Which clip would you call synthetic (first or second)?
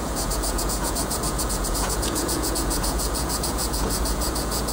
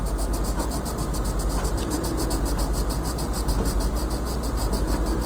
first